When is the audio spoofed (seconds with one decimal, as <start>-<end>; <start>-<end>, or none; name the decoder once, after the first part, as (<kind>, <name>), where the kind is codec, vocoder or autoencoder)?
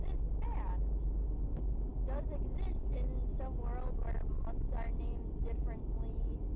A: none